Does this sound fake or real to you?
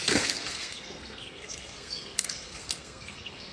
fake